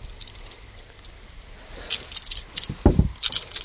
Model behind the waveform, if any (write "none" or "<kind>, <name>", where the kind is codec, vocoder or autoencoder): none